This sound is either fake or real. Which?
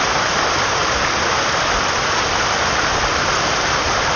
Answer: real